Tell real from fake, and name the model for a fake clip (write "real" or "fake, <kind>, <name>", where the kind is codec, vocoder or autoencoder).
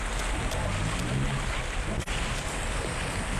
real